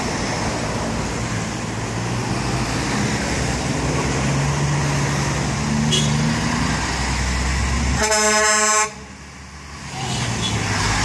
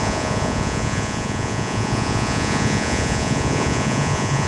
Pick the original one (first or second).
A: first